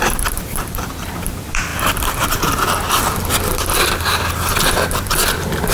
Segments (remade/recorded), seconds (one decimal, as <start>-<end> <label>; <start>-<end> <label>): 0.0-5.7 remade